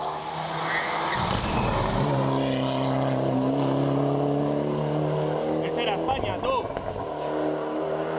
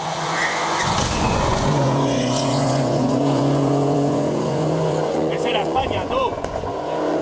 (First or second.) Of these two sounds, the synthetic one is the second